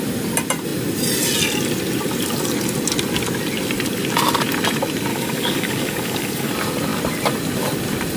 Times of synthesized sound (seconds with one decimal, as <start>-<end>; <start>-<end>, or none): 5.1-6.5